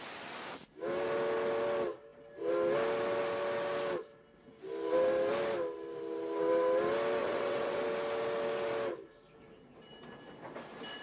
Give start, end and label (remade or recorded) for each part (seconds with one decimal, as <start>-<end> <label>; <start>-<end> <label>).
0.0-7.2 recorded; 7.2-7.8 remade; 7.8-11.0 recorded

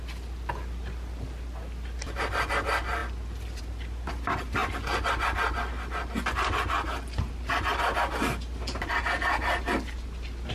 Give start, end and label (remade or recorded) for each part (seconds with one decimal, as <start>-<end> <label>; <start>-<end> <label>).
0.0-10.5 recorded

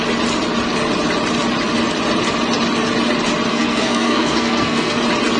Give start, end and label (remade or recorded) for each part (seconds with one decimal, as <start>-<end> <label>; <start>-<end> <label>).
0.0-3.5 recorded; 3.5-5.0 remade; 5.0-5.4 recorded